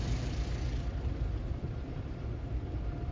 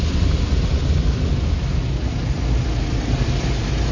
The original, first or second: second